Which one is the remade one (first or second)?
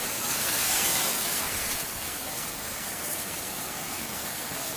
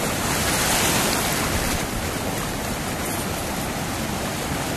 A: first